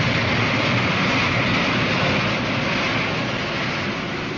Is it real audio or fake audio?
real